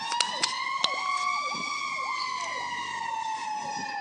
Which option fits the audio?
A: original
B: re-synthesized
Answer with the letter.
A